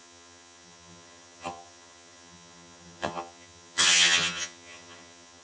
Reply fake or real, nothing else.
fake